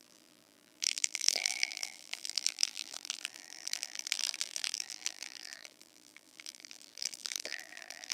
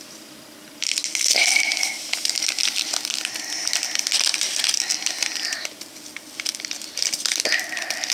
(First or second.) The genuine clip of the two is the second